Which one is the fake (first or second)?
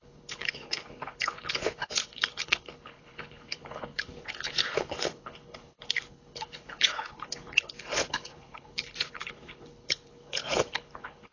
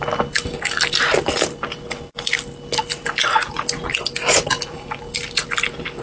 first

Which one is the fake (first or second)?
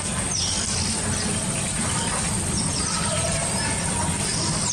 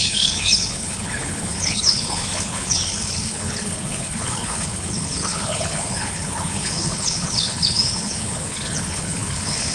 second